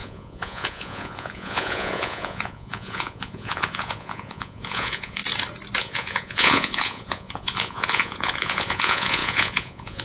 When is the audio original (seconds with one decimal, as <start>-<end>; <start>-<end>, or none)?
5.2-5.8